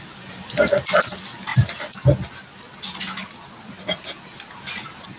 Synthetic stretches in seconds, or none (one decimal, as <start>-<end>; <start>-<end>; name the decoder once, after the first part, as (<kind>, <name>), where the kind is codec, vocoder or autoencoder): none